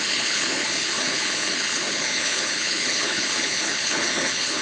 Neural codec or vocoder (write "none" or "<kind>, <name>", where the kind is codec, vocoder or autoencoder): codec, HILCodec